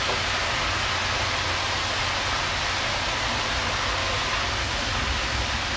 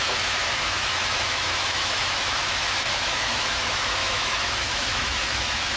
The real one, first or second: first